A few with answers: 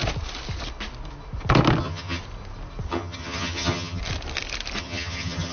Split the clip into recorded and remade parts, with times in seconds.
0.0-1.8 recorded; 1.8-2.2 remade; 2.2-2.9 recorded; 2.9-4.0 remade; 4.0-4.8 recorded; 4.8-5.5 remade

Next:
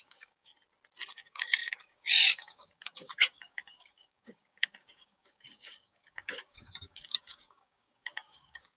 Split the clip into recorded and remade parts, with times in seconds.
0.0-0.5 remade; 0.5-1.1 recorded; 1.1-8.8 remade

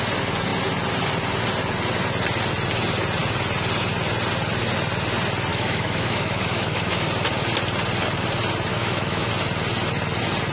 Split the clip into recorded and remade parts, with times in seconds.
0.0-5.5 recorded; 5.5-7.1 remade; 7.1-8.7 recorded; 8.7-9.3 remade; 9.3-10.5 recorded